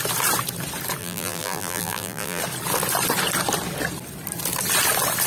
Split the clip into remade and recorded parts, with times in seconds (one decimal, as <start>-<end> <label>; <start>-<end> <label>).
0.0-1.0 recorded; 1.0-2.4 remade; 2.4-5.3 recorded